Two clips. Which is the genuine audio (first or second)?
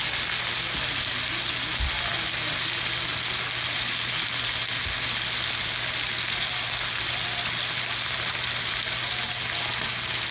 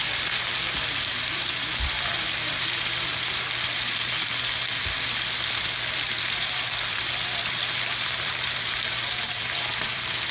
first